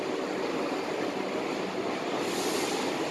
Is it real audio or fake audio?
real